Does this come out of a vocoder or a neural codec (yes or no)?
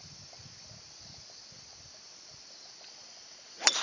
no